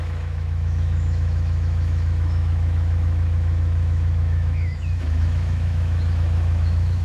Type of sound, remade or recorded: remade